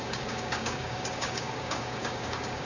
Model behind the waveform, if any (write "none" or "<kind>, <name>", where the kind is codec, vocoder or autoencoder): codec, DAC